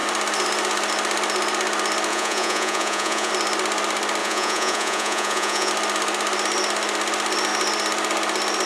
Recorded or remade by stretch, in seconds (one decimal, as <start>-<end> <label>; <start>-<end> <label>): 0.0-2.1 recorded; 2.1-3.3 remade; 3.3-4.2 recorded; 4.2-5.7 remade; 5.7-8.7 recorded